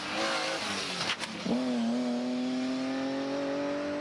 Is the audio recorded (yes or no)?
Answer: yes